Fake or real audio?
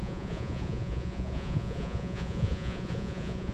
fake